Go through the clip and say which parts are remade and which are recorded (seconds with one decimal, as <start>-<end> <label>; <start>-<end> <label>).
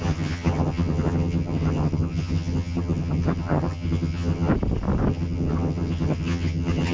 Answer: 0.0-4.5 remade; 4.5-5.1 recorded; 5.1-6.9 remade